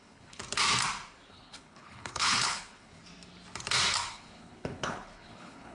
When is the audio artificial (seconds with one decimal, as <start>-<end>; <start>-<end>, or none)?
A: 0.0-0.4; 1.3-3.0; 4.1-5.7